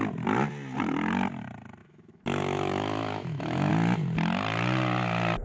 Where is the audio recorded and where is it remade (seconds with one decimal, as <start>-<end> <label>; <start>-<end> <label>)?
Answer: 0.0-1.8 recorded; 1.8-3.7 remade; 3.7-5.4 recorded